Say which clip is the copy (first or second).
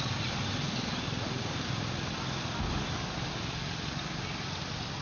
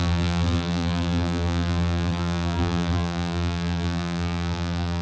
second